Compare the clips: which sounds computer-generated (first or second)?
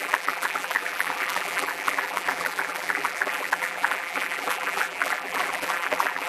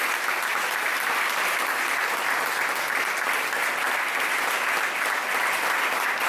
first